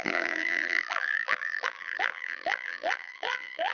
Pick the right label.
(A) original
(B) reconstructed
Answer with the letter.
B